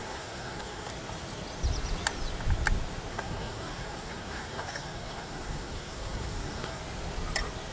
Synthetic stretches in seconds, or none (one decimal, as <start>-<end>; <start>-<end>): 0.0-0.9; 3.1-6.8